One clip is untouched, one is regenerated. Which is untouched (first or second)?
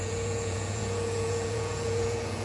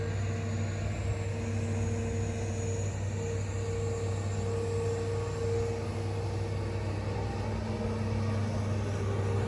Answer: second